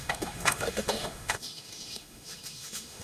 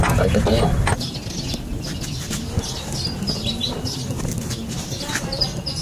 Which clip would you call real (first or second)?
second